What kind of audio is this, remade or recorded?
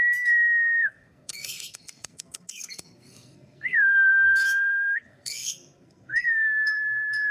remade